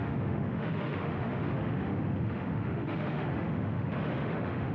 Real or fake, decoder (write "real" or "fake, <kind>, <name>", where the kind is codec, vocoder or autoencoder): fake, autoencoder, DAC-VAE